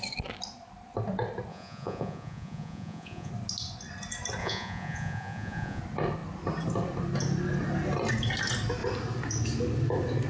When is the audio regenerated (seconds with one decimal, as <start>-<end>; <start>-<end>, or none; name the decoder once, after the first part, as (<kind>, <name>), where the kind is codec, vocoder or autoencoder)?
1.5-3.3 (vocoder, Vocos); 4.4-5.8